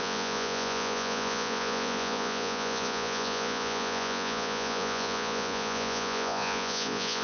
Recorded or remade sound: remade